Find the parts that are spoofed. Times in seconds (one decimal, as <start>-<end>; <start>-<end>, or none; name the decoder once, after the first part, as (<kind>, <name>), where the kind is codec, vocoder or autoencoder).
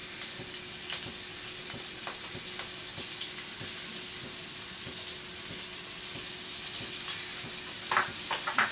none